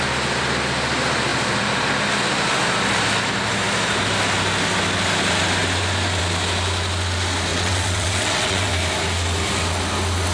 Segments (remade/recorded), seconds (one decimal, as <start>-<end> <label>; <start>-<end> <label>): 0.0-7.5 recorded; 7.5-8.7 remade; 8.7-10.3 recorded